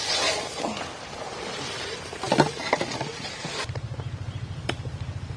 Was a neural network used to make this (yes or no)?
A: yes